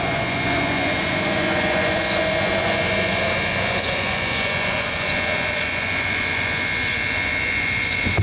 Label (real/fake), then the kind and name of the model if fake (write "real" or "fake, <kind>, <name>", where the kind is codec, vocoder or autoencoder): fake, vocoder, Vocos